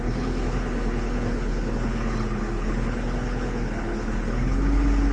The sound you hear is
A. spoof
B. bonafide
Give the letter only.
A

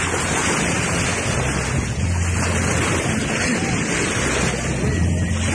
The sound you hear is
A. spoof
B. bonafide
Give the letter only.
B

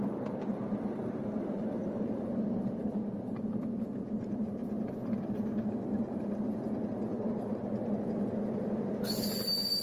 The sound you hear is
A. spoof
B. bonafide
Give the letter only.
A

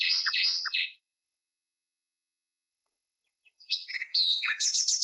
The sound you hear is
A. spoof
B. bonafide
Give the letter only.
A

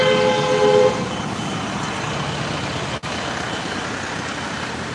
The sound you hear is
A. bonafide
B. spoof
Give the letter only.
A